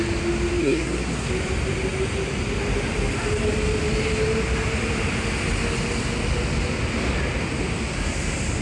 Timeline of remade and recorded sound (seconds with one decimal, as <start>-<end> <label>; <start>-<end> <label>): 0.0-0.6 recorded; 0.6-1.3 remade; 1.3-8.6 recorded